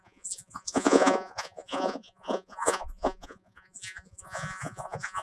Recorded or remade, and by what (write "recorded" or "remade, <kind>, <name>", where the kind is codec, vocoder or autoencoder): remade, vocoder, Vocos